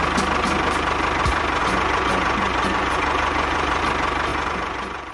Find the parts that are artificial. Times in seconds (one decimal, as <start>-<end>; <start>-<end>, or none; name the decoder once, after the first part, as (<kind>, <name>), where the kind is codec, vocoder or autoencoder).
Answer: 1.6-3.8 (vocoder, Vocos); 4.3-5.1